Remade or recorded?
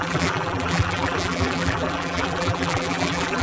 remade